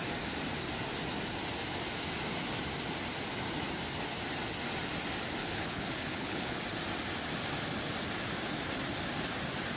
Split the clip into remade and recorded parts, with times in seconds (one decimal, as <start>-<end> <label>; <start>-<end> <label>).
0.0-5.4 recorded; 5.4-6.6 remade; 6.6-9.8 recorded

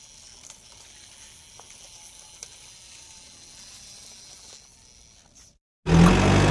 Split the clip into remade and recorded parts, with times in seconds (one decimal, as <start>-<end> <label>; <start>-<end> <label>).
0.0-6.5 recorded

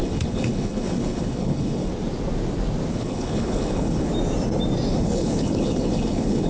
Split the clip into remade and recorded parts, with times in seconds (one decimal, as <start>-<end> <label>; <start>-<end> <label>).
0.0-1.9 remade; 1.9-2.9 recorded; 2.9-4.1 remade; 4.1-4.9 recorded; 4.9-6.5 remade

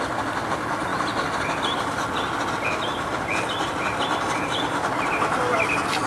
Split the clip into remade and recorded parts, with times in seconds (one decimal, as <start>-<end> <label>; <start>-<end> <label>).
0.0-6.1 recorded

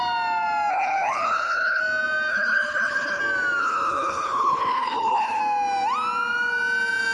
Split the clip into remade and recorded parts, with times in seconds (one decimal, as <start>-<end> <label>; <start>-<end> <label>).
0.0-0.7 recorded; 0.7-1.8 remade; 1.8-2.3 recorded; 2.3-3.2 remade; 3.2-3.6 recorded; 3.6-5.4 remade; 5.4-7.1 recorded

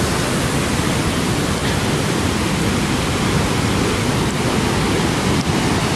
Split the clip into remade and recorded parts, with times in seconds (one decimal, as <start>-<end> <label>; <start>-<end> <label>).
0.0-6.0 recorded